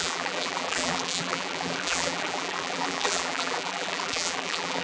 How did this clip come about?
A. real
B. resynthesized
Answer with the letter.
B